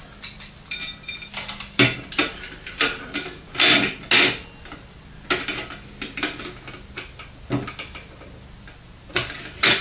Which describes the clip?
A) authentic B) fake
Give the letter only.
A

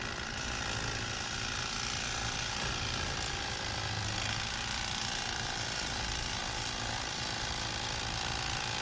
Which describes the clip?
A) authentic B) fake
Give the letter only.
A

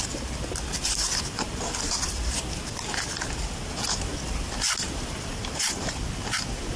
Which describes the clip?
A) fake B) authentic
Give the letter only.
B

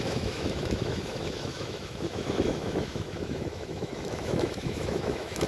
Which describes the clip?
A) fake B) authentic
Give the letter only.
A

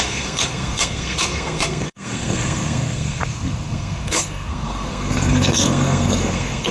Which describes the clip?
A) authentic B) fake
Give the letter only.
B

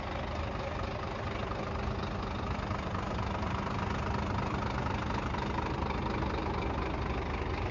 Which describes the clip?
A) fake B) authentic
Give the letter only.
B